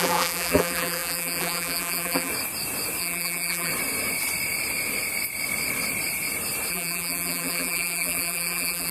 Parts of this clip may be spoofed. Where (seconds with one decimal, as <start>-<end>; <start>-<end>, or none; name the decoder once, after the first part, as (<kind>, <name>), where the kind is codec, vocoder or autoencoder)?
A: 0.0-2.3 (vocoder, BigVGAN v2); 3.0-3.7; 6.7-8.9